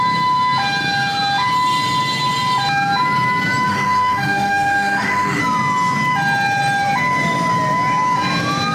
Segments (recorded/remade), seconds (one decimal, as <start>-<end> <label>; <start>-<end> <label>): 0.0-3.7 recorded; 3.7-5.4 remade; 5.4-8.7 recorded